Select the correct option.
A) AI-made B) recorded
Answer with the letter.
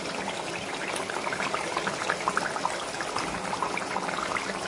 B